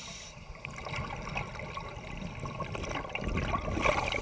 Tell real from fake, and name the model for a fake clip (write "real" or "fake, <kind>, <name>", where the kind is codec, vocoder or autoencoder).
real